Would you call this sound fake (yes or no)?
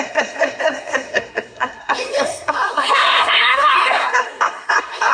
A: yes